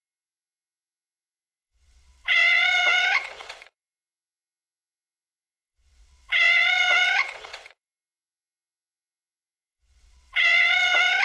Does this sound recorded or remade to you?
remade